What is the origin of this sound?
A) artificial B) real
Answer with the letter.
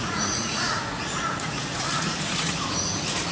A